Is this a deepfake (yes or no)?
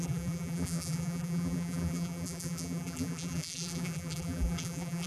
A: yes